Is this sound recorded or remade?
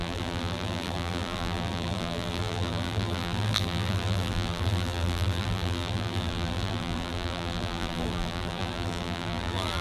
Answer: remade